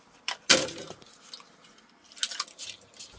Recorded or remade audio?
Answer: recorded